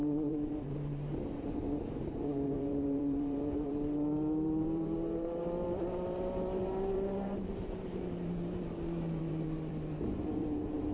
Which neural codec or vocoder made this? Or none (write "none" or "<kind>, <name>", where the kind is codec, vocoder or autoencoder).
vocoder, BigVGAN v2